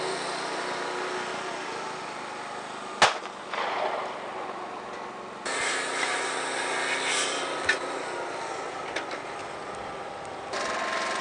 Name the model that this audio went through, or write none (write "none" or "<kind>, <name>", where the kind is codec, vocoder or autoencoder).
none